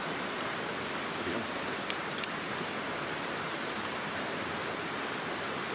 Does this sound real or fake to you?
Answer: real